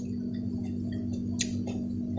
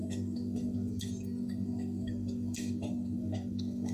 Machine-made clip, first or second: second